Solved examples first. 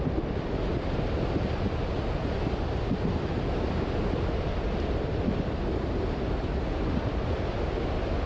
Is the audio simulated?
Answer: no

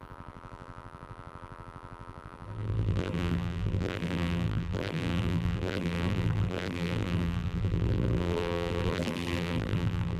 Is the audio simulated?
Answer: yes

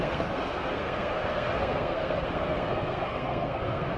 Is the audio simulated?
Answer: yes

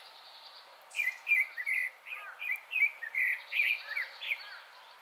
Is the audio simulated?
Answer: yes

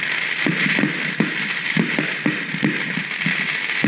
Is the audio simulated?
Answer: no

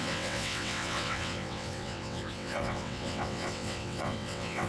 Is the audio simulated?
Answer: yes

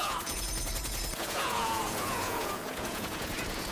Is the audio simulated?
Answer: yes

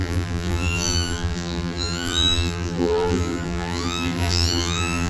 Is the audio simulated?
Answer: yes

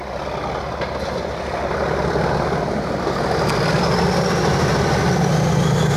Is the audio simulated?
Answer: no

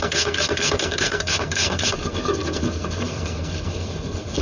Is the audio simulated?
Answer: yes